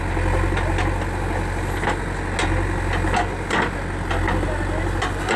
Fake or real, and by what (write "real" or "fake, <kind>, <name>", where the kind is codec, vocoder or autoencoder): real